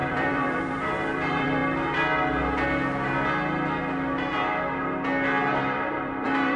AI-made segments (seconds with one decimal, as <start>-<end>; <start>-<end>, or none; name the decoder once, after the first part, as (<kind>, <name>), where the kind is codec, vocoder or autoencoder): 0.0-1.6 (vocoder, BigVGAN v2); 5.6-6.6